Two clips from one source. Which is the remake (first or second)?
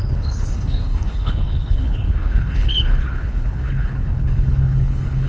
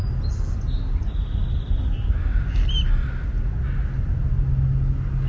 first